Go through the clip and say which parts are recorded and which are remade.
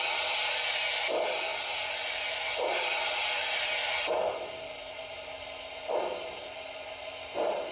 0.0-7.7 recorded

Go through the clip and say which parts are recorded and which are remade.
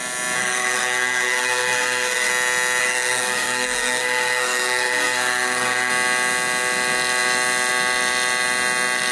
0.0-0.4 recorded; 0.4-2.3 remade; 2.3-2.8 recorded; 2.8-5.9 remade; 5.9-9.1 recorded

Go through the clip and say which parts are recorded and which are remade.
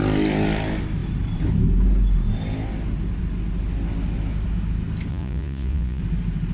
0.0-5.1 recorded; 5.1-6.0 remade; 6.0-6.5 recorded